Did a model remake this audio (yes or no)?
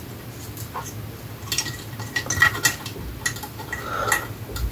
no